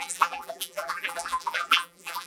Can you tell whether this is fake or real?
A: fake